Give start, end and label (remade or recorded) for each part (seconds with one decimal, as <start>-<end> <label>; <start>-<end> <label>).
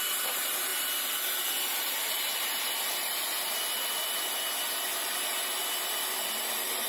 0.0-0.7 remade; 0.7-1.8 recorded; 1.8-2.3 remade; 2.3-6.4 recorded; 6.4-6.9 remade